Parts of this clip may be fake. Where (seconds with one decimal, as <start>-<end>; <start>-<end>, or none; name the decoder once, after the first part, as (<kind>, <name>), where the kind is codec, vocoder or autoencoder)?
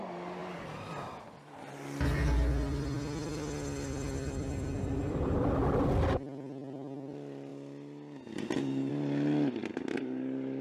none